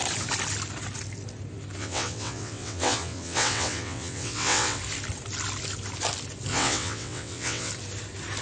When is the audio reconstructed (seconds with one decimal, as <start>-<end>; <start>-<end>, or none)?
1.8-4.8; 6.5-7.7

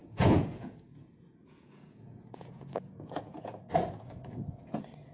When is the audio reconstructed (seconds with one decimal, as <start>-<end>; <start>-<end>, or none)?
0.0-5.1

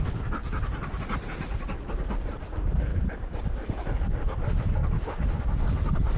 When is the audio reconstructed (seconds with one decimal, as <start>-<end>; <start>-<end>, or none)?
none

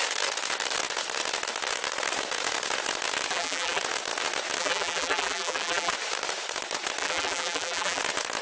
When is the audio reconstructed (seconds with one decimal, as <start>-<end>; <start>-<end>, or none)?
3.3-3.8; 4.6-5.9; 7.0-8.0

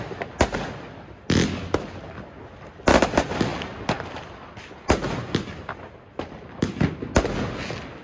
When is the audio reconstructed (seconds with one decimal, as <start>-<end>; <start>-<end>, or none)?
none

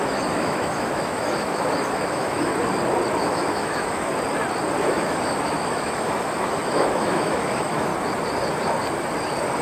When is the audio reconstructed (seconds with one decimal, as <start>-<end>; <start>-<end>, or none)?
0.0-2.5; 3.2-4.1; 4.8-7.9

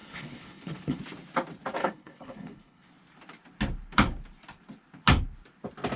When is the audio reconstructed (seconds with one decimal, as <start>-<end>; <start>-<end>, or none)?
0.0-1.0; 1.8-2.9

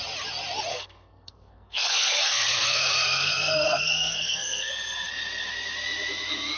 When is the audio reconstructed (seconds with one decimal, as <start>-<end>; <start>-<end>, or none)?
0.7-4.7